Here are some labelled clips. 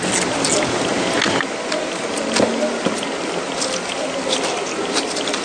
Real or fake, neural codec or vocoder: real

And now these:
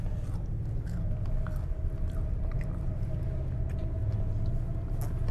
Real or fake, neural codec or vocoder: real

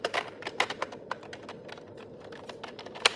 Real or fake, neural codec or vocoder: real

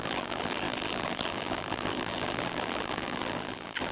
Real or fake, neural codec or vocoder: fake, vocoder, BigVGAN v2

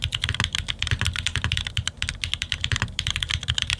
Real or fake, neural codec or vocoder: real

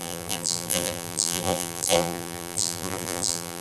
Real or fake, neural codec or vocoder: fake, vocoder, BigVGAN v2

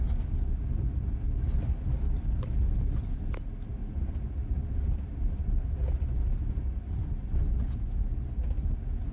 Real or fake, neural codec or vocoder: real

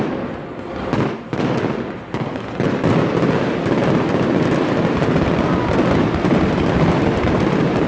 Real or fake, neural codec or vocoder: real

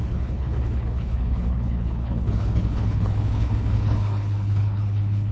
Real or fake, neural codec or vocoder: fake, codec, HILCodec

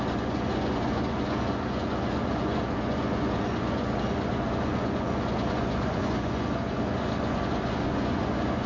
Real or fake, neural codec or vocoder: fake, vocoder, Vocos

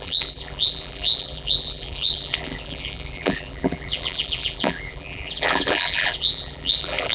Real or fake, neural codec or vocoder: fake, vocoder, BigVGAN v2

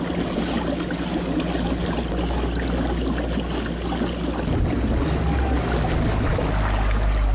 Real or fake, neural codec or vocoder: real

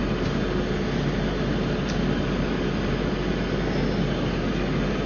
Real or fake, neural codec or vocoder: real